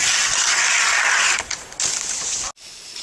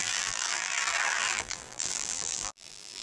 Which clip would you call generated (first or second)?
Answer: second